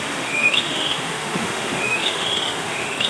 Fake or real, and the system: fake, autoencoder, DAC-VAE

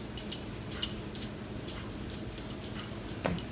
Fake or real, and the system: real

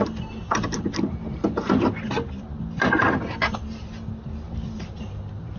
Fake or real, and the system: real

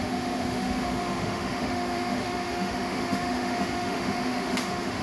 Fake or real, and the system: fake, autoencoder, DAC-VAE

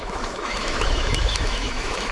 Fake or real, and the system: fake, autoencoder, DAC-VAE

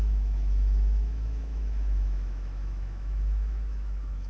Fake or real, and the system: fake, autoencoder, DAC-VAE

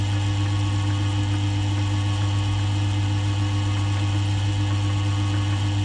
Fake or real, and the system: real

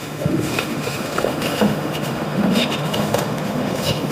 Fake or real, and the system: fake, autoencoder, DAC-VAE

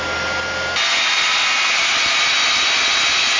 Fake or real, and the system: real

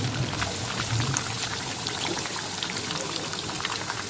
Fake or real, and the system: real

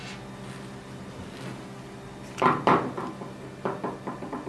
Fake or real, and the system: real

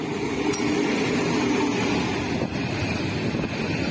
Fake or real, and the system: real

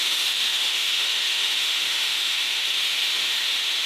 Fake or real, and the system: fake, autoencoder, DAC-VAE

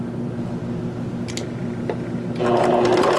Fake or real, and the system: real